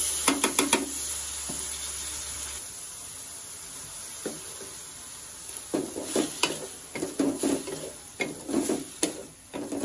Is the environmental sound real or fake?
real